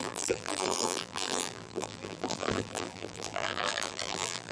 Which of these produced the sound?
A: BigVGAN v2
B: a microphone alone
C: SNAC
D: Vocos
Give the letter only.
A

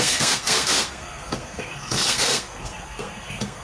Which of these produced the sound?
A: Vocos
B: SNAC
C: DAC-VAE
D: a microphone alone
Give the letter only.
B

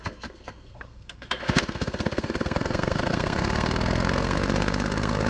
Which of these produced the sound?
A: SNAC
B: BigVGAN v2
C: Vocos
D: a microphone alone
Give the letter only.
A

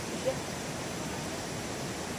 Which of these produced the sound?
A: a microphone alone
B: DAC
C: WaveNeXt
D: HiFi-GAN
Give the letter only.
A